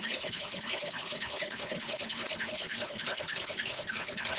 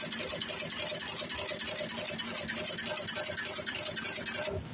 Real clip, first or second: second